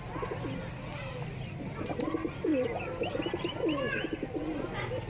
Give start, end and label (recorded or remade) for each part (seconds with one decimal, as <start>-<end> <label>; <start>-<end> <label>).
0.0-5.1 recorded